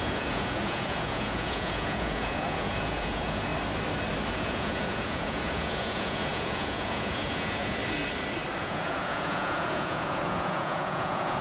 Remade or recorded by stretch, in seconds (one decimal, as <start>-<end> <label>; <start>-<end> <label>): 0.0-3.5 remade; 3.5-4.3 recorded; 4.3-7.8 remade; 7.8-8.6 recorded; 8.6-11.4 remade